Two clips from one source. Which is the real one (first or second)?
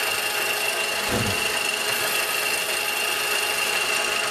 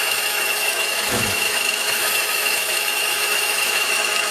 first